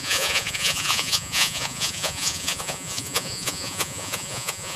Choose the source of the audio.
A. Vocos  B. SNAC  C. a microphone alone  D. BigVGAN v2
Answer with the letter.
A